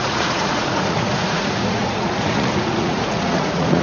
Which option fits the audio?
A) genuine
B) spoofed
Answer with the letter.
B